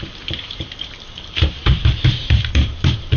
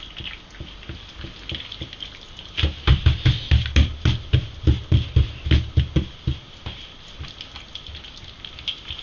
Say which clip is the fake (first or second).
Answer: first